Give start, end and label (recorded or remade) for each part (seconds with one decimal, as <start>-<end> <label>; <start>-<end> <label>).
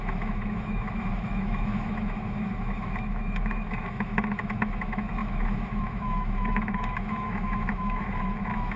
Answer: 0.0-8.8 remade